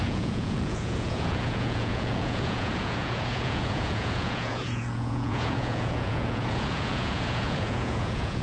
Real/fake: fake